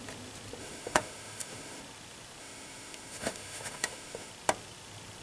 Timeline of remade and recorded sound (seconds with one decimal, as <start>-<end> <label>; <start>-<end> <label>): 0.0-0.6 recorded; 0.6-1.8 remade; 1.8-2.4 recorded; 2.4-4.3 remade; 4.3-5.2 recorded